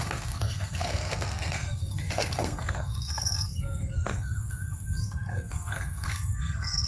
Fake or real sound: fake